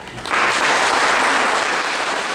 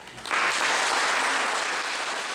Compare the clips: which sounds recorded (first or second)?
second